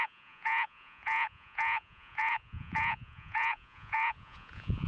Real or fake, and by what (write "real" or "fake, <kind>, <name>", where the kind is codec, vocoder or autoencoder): fake, vocoder, Vocos